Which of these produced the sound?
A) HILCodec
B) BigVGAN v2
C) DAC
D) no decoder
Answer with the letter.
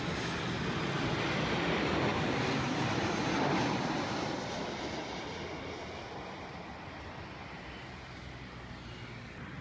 D